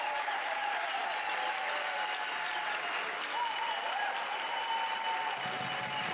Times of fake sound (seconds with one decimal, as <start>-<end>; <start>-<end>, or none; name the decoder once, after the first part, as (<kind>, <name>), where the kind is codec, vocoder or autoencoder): none